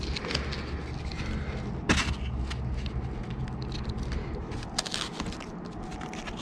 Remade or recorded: recorded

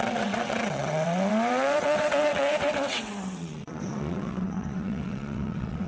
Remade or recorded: remade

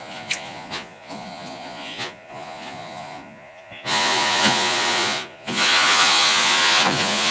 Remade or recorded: remade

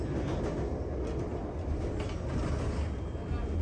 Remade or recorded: recorded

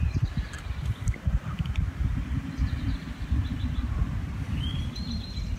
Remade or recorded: remade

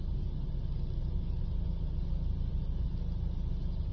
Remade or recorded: recorded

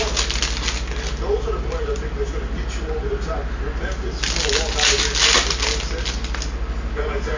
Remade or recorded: recorded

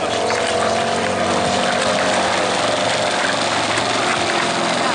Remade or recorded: recorded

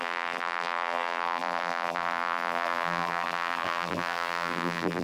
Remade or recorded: remade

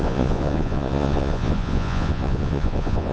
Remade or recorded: remade